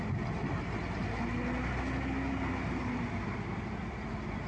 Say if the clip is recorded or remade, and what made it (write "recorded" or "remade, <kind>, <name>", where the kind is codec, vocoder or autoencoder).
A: recorded